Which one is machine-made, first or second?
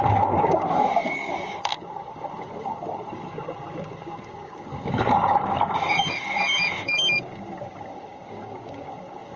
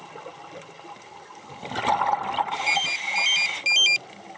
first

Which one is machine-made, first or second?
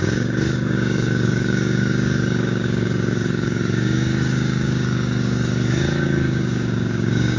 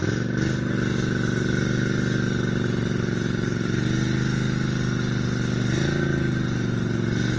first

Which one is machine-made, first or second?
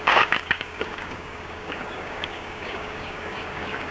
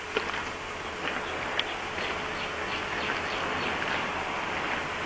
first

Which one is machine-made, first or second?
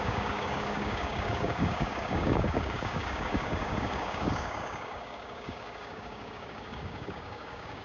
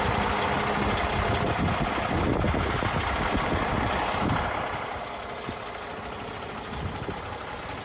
first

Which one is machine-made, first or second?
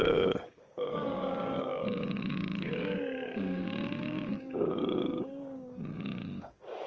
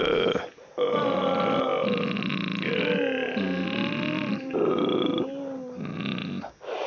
first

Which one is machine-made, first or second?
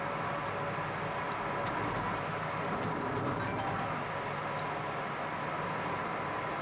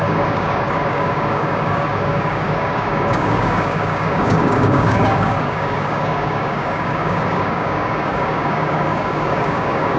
second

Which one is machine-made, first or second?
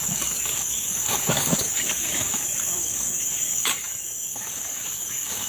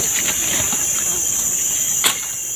first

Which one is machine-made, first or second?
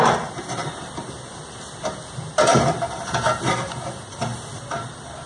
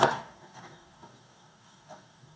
second